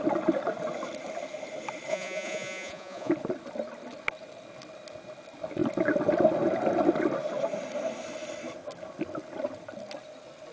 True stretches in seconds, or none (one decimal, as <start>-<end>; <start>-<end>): 0.0-1.9; 3.1-10.5